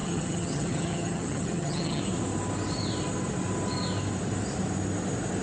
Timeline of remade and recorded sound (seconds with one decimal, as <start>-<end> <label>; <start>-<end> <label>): 0.0-2.0 remade; 2.0-5.4 recorded